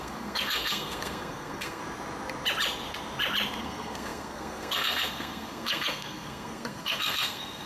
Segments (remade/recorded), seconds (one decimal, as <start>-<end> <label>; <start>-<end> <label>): 0.0-1.8 remade; 1.8-3.6 recorded; 3.6-7.7 remade